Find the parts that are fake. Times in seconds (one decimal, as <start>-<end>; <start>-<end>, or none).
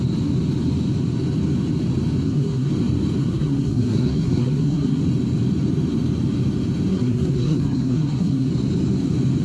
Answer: 2.2-2.7; 3.2-5.0; 6.9-8.5